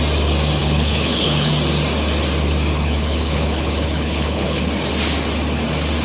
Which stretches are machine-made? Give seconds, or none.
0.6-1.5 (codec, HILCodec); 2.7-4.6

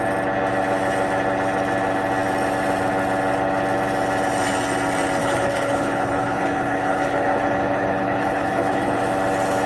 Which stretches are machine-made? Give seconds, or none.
5.2-9.0 (codec, HILCodec)

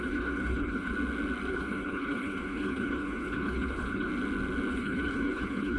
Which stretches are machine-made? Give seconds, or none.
0.0-0.9 (codec, HILCodec); 1.5-4.1; 4.7-5.8

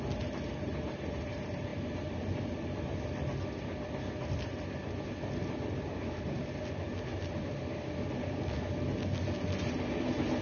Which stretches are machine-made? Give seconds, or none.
none

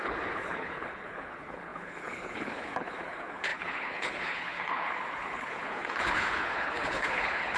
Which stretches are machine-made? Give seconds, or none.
0.0-7.6 (codec, HILCodec)